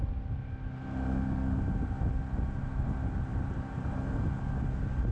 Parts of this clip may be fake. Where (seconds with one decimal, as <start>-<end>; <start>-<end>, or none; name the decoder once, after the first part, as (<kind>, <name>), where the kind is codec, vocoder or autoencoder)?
3.3-4.4 (vocoder, BigVGAN v2)